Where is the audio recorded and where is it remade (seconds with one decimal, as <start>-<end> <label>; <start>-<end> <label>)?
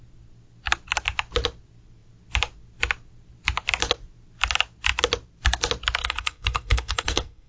0.0-6.0 recorded; 6.0-7.5 remade